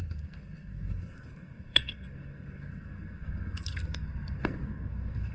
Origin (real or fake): fake